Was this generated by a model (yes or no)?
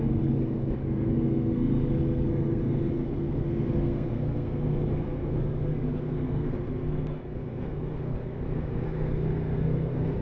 yes